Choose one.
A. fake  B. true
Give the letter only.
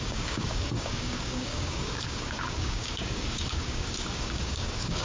A